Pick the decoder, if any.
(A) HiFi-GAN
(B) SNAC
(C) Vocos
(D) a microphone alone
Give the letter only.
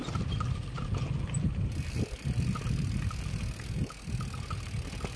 D